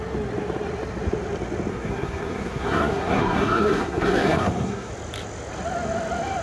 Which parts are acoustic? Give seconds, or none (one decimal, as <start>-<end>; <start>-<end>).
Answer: 0.0-1.7; 4.9-6.4